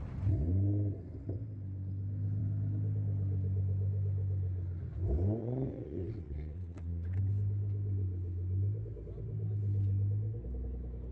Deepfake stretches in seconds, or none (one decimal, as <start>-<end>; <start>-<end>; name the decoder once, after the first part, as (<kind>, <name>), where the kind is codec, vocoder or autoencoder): 5.4-7.3 (vocoder, Vocos)